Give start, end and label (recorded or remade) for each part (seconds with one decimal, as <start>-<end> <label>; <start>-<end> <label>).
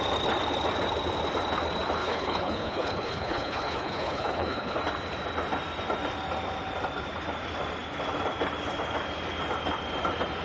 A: 0.0-2.0 recorded; 2.0-4.8 remade; 4.8-10.4 recorded